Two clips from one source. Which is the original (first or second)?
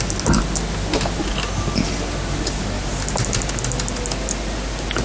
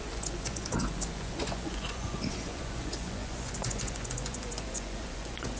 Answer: first